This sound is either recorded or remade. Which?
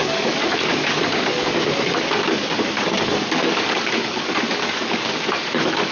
remade